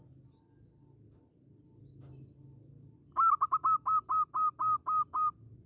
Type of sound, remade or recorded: recorded